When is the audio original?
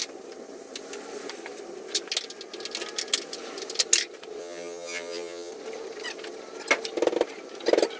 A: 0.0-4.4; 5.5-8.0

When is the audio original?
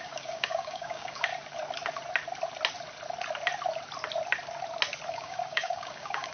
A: 1.3-5.1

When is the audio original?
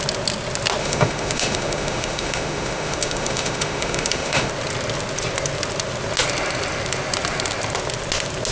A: 0.0-0.8; 4.5-8.5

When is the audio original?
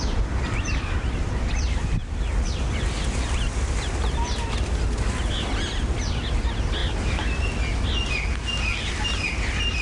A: 0.0-9.8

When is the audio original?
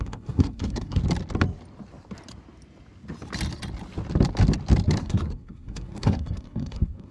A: 1.0-5.0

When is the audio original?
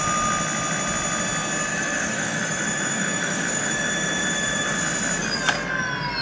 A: 0.0-1.7; 4.8-6.2